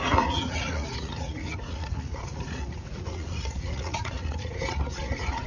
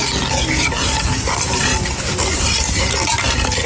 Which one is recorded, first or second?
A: second